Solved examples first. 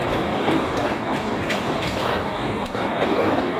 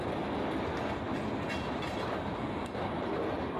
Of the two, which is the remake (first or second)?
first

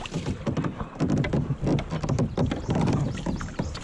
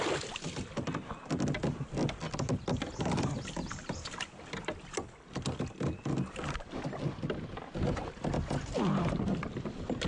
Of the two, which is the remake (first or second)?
first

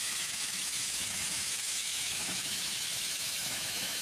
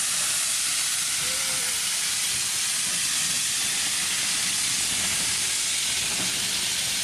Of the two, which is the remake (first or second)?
first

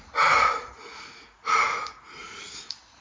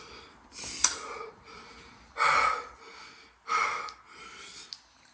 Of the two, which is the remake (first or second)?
first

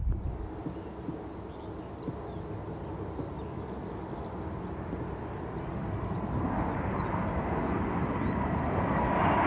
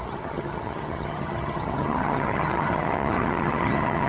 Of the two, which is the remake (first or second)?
second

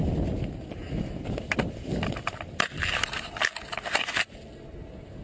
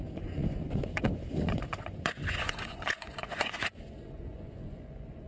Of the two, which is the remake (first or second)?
second